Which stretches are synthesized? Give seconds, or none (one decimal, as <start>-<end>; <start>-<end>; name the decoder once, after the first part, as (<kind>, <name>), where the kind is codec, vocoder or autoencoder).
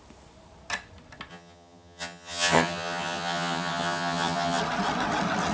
1.3-4.6 (vocoder, HiFi-GAN)